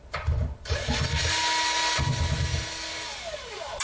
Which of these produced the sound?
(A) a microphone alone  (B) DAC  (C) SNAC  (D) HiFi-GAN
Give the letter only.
A